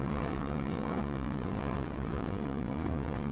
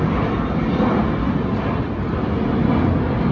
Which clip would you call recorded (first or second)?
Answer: second